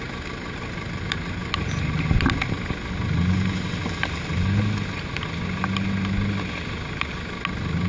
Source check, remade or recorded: recorded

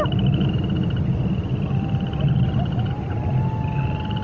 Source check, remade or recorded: recorded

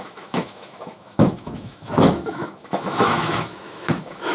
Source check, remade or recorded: remade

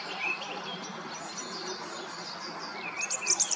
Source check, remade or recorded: recorded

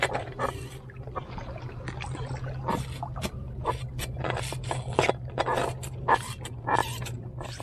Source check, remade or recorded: recorded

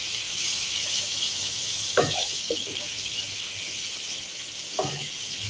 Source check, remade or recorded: remade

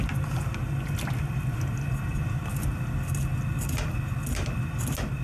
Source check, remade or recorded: recorded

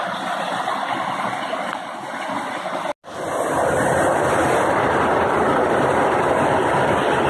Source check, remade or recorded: recorded